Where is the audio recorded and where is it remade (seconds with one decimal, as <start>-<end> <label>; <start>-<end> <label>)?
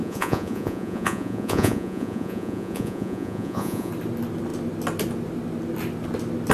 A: 0.0-3.9 remade; 3.9-6.5 recorded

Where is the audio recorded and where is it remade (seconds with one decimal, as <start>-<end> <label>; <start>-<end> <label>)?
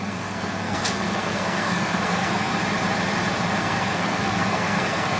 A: 0.0-2.5 remade; 2.5-3.6 recorded; 3.6-5.2 remade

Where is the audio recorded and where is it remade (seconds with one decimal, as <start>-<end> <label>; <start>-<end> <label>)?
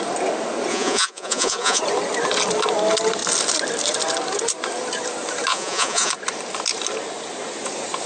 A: 0.0-0.7 recorded; 0.7-1.8 remade; 1.8-5.5 recorded; 5.5-6.1 remade; 6.1-8.1 recorded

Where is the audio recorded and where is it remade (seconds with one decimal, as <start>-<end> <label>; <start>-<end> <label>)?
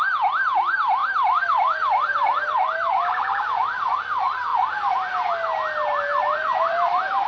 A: 0.0-1.0 recorded; 1.0-3.9 remade; 3.9-4.5 recorded; 4.5-5.3 remade; 5.3-6.1 recorded; 6.1-7.3 remade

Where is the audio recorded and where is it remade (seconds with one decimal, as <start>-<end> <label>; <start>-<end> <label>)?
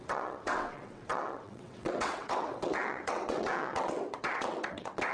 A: 0.0-5.1 remade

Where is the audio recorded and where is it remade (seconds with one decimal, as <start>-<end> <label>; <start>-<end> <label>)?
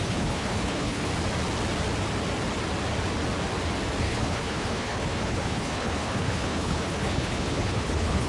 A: 0.0-1.1 remade; 1.1-4.0 recorded; 4.0-8.3 remade